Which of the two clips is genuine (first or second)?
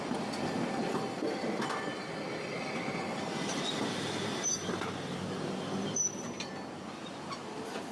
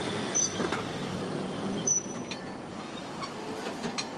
first